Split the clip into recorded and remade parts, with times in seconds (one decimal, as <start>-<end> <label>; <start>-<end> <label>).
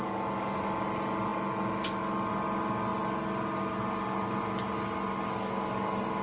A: 0.0-6.2 recorded